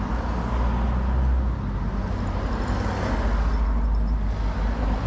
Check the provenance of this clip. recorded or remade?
recorded